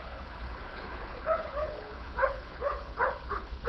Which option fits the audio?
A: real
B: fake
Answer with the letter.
B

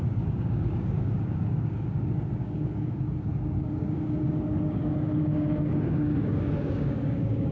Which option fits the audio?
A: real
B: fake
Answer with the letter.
B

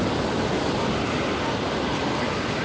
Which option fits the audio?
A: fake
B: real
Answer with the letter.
B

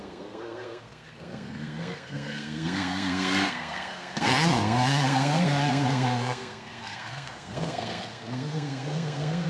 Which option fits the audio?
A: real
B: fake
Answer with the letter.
B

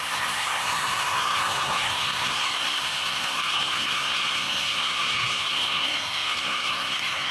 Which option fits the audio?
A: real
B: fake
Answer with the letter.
B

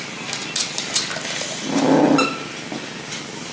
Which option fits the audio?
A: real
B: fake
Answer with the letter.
A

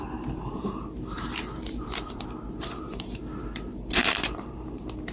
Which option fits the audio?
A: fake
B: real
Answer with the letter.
A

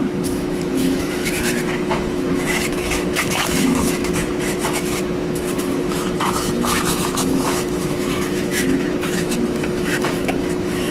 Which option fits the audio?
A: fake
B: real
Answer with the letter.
A